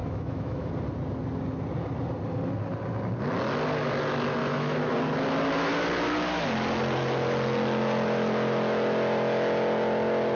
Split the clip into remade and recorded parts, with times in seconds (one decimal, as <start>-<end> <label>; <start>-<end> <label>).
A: 0.0-0.7 remade; 0.7-4.4 recorded; 4.4-4.9 remade; 4.9-10.3 recorded